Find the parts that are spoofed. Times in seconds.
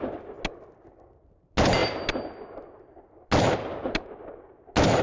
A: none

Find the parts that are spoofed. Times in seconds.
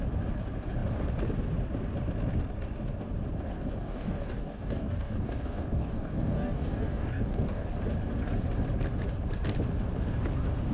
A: 3.8-7.8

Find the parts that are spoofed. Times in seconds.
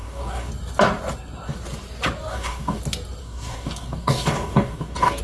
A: 0.0-0.5; 2.3-2.8; 3.2-5.2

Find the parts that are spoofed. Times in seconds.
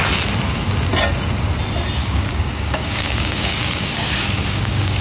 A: 2.0-5.0